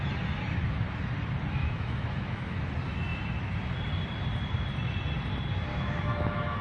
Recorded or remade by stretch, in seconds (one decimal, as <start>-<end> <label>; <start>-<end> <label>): 0.0-1.6 recorded; 1.6-2.6 remade; 2.6-5.7 recorded; 5.7-6.6 remade